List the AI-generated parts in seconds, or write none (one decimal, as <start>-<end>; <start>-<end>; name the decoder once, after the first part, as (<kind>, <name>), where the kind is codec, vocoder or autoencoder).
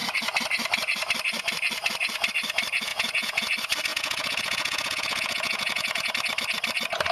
2.9-3.5 (vocoder, Vocos); 3.9-6.1